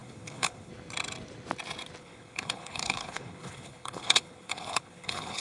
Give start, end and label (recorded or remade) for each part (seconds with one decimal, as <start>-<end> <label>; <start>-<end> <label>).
0.0-0.7 remade; 0.7-2.0 recorded; 2.0-5.4 remade